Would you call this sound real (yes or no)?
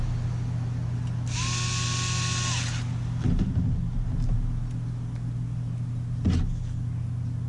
yes